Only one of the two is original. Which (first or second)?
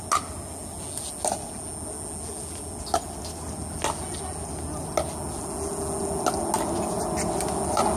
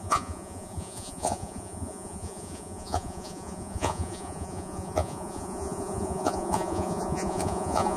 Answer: first